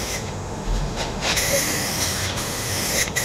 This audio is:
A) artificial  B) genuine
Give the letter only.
A